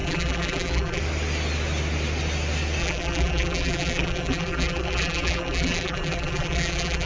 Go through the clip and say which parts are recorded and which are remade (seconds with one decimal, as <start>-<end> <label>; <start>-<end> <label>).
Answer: 0.0-1.0 remade; 1.0-2.8 recorded; 2.8-7.1 remade

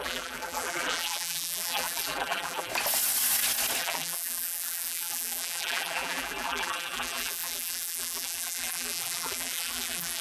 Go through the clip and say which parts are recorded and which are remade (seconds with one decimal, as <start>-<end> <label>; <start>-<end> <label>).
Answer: 0.0-2.7 remade; 2.7-3.8 recorded; 3.8-10.2 remade

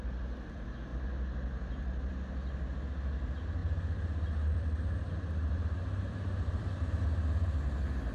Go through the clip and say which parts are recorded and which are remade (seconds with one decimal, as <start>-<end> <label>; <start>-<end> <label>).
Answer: 0.0-3.6 recorded; 3.6-7.0 remade; 7.0-8.1 recorded

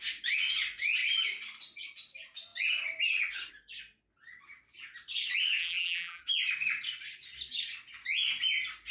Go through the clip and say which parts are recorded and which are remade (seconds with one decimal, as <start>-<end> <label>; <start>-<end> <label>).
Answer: 0.0-5.6 recorded; 5.6-6.2 remade; 6.2-8.9 recorded

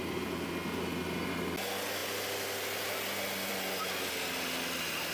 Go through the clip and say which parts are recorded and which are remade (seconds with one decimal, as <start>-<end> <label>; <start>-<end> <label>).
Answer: 0.0-5.1 recorded

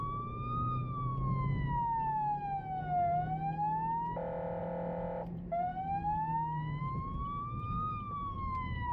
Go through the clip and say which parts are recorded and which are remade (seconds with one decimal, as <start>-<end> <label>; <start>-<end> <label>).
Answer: 0.0-1.1 remade; 1.1-4.6 recorded; 4.6-5.7 remade; 5.7-6.8 recorded; 6.8-8.9 remade

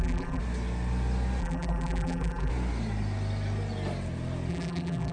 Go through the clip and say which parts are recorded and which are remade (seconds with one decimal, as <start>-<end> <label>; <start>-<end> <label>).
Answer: 0.0-0.4 remade; 0.4-1.4 recorded; 1.4-2.5 remade; 2.5-4.5 recorded; 4.5-5.1 remade

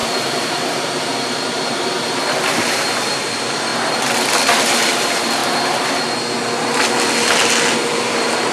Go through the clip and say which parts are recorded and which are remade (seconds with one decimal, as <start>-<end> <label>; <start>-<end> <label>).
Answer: 0.0-3.7 remade; 3.7-4.9 recorded; 4.9-5.4 remade; 5.4-7.7 recorded; 7.7-8.5 remade